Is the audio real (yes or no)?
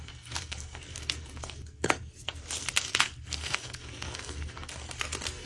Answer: no